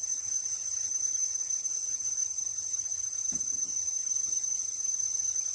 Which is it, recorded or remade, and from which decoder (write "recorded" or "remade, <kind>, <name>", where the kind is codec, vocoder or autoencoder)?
remade, vocoder, HiFi-GAN